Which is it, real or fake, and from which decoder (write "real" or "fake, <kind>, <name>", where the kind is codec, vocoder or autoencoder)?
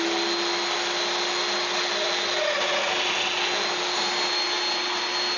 real